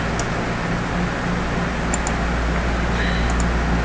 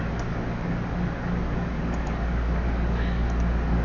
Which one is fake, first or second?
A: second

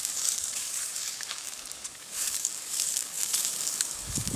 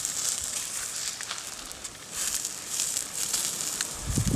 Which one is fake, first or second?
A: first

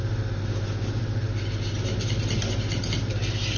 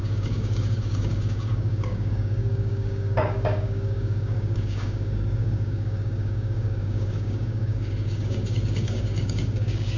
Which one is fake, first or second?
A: second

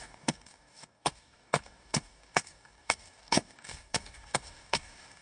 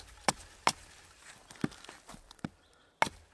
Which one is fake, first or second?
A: first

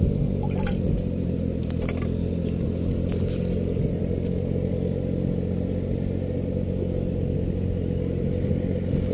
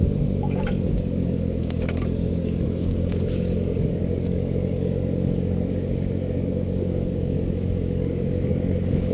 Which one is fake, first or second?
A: second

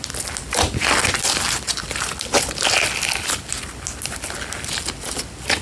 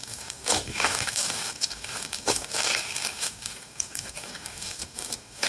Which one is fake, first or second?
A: second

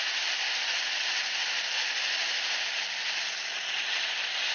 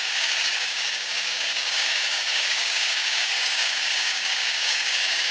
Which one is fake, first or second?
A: second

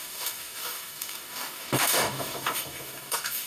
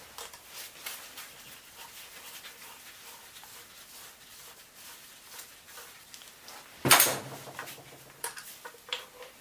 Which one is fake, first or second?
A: first